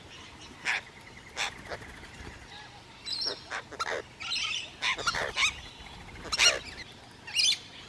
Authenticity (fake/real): real